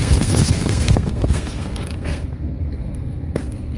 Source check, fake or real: fake